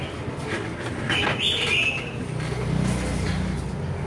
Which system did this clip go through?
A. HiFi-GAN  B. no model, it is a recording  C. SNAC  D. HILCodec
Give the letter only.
B